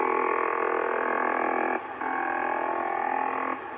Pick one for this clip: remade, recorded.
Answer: recorded